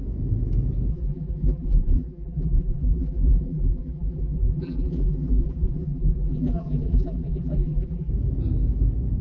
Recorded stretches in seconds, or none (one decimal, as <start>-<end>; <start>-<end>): 0.0-0.9; 8.1-9.2